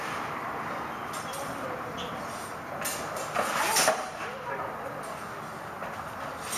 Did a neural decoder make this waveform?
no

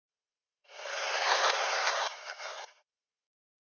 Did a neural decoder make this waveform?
yes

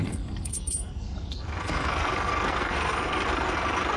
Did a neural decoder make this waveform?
yes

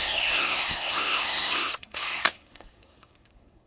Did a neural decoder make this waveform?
yes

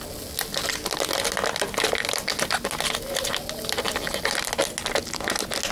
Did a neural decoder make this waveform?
no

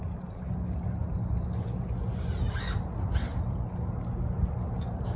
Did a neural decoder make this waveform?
no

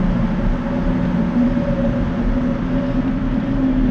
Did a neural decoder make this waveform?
no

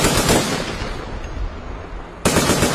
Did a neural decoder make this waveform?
no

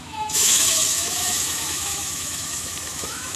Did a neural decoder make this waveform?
yes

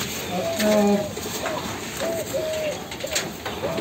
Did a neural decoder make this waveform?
no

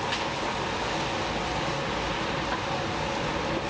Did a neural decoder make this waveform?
no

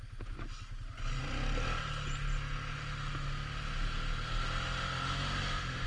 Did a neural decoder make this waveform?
no